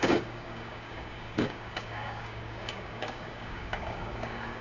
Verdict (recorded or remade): remade